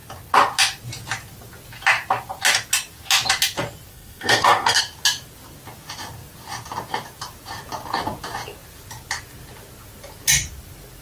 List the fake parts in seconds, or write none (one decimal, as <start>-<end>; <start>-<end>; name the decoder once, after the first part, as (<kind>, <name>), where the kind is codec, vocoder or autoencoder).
3.9-4.8 (codec, SNAC)